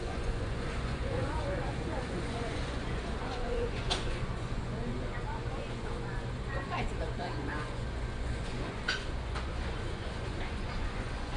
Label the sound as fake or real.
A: fake